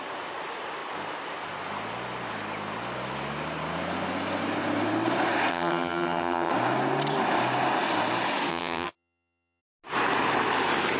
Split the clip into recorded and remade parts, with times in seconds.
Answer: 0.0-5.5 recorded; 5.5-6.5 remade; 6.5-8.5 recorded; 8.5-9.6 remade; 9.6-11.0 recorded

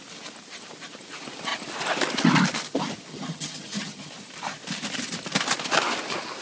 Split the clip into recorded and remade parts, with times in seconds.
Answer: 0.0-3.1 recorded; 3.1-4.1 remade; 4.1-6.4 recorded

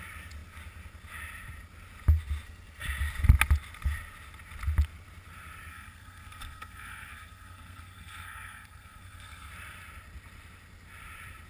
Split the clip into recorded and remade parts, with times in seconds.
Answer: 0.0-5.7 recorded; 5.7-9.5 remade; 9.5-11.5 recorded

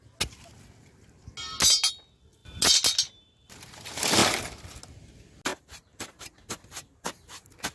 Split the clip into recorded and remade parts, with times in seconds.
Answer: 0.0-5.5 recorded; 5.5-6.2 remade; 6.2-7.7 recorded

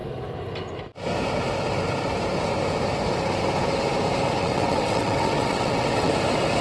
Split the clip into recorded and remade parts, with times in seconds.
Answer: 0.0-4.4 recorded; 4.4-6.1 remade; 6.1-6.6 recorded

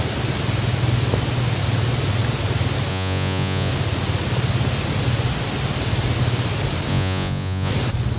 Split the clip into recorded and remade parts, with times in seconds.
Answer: 0.0-2.9 recorded; 2.9-3.7 remade; 3.7-6.9 recorded; 6.9-7.7 remade; 7.7-8.2 recorded

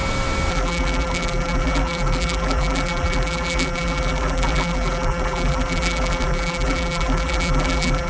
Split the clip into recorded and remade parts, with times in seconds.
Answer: 0.0-0.5 recorded; 0.5-8.1 remade

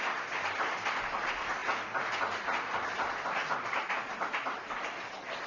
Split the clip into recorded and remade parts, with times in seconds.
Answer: 0.0-5.5 recorded